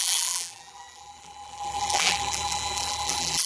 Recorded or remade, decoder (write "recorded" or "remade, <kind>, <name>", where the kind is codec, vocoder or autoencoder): remade, vocoder, BigVGAN v2